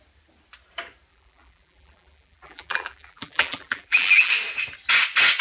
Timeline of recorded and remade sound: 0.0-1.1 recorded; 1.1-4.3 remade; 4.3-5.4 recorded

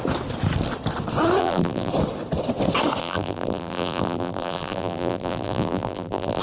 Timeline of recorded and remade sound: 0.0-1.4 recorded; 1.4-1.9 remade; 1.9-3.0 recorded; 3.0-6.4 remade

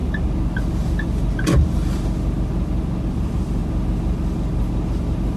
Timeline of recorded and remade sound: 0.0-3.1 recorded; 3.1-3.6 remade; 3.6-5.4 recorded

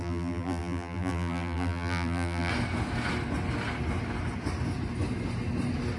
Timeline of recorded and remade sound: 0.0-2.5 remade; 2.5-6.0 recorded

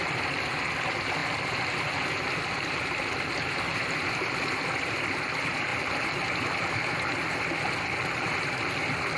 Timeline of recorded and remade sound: 0.0-5.7 recorded; 5.7-6.8 remade; 6.8-9.2 recorded

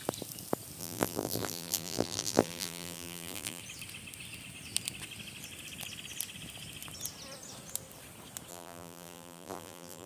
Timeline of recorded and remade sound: 0.0-0.8 recorded; 0.8-3.6 remade; 3.6-8.5 recorded; 8.5-10.1 remade

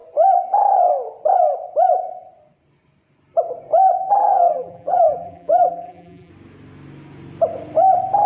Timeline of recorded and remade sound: 0.0-4.1 recorded; 4.1-6.3 remade; 6.3-8.3 recorded

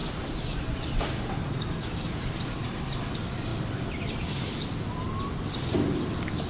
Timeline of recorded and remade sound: 0.0-2.3 remade; 2.3-3.5 recorded; 3.5-5.0 remade; 5.0-6.5 recorded